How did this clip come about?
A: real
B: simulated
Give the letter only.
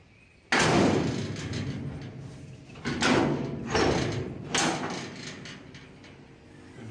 A